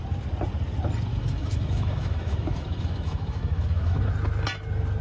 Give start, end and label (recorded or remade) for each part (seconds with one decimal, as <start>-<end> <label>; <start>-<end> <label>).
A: 0.0-1.1 recorded; 1.1-4.1 remade; 4.1-5.0 recorded